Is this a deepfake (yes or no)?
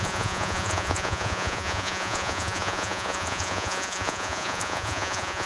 yes